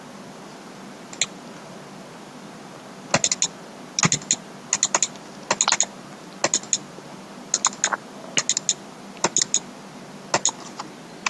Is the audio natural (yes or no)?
yes